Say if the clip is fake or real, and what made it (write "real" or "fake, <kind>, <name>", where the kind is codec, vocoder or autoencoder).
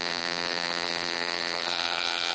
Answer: fake, vocoder, BigVGAN v2